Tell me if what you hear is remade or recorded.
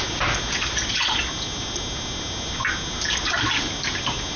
recorded